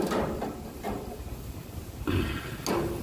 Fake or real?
real